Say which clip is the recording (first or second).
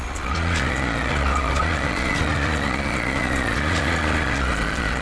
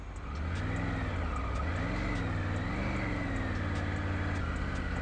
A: second